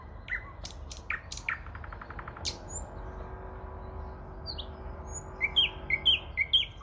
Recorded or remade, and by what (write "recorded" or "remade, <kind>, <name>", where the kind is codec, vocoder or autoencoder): recorded